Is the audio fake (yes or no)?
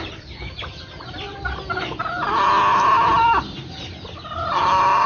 no